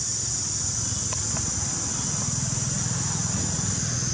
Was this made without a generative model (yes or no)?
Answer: yes